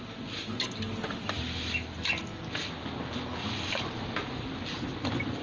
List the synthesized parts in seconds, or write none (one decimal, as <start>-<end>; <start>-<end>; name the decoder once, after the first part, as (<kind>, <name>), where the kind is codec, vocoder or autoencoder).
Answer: none